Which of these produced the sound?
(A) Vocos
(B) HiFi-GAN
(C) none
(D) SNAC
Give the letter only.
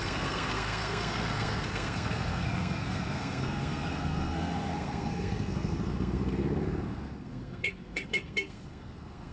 D